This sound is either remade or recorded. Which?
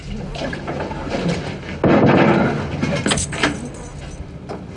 recorded